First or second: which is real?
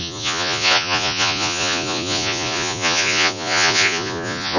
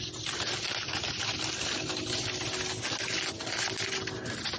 second